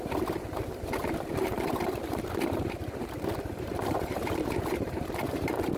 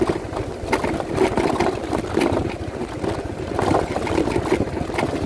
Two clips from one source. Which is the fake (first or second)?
first